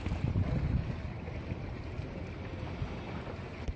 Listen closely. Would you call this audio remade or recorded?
recorded